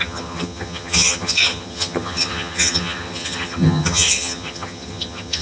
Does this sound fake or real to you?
fake